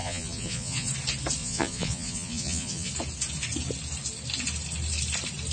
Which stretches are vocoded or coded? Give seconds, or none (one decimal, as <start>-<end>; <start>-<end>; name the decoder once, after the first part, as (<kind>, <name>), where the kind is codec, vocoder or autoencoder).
0.0-0.9 (vocoder, Vocos); 1.4-2.9